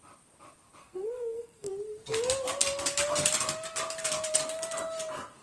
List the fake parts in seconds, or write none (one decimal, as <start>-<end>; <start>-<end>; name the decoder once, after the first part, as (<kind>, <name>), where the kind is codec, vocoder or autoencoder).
0.8-1.7 (codec, SNAC)